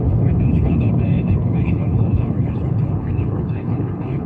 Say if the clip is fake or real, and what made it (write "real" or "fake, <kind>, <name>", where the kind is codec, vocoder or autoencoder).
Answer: fake, codec, HILCodec